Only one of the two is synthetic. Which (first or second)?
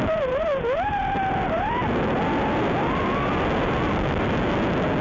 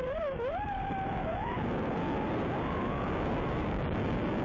second